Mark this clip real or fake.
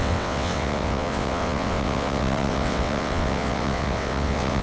fake